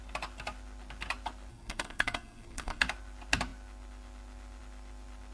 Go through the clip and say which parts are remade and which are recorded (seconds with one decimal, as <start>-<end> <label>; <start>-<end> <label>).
0.0-1.5 recorded; 1.5-2.8 remade; 2.8-5.3 recorded